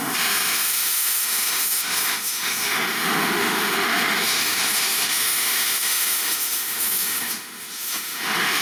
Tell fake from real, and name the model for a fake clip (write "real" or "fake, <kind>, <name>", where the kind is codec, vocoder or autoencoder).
fake, autoencoder, DAC-VAE